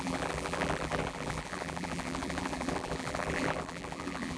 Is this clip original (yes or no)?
no